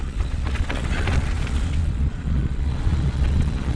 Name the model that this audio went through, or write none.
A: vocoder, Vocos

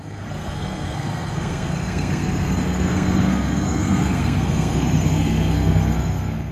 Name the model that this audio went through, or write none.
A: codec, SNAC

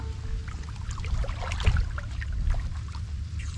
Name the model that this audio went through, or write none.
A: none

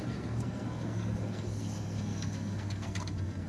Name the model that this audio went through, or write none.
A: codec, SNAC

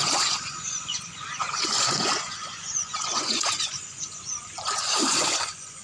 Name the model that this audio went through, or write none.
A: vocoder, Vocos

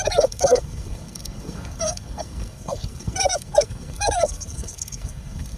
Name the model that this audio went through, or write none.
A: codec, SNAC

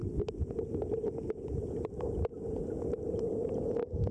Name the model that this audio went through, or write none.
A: none